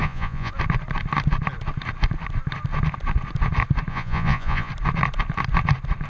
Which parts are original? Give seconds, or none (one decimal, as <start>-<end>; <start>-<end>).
0.5-3.9; 4.7-6.1